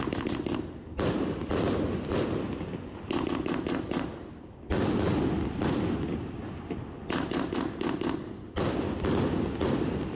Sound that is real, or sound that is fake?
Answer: real